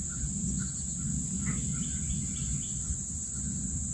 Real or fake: real